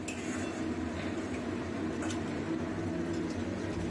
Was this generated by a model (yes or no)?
no